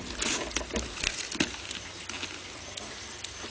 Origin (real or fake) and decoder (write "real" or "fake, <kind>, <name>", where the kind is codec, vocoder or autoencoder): real